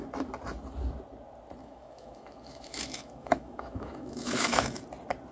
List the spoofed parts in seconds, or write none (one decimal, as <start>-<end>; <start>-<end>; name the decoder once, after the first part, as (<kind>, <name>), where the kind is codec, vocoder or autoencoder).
1.6-4.8 (autoencoder, DAC-VAE)